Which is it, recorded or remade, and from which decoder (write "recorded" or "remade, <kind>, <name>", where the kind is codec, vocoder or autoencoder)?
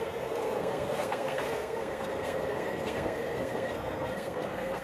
remade, codec, SNAC